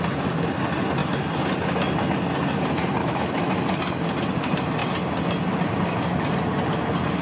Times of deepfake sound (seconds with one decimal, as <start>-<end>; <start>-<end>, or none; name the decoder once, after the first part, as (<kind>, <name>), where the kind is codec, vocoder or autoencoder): 3.0-3.6 (autoencoder, DAC-VAE)